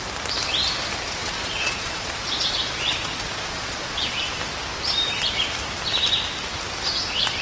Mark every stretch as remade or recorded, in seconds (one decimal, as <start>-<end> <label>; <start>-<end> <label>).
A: 0.0-1.2 recorded; 1.2-4.1 remade; 4.1-7.4 recorded